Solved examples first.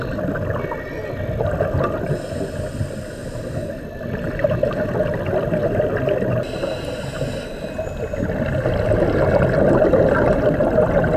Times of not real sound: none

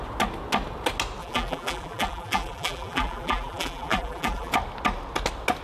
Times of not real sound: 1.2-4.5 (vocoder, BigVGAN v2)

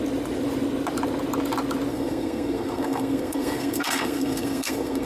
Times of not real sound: 1.9-5.1 (codec, SNAC)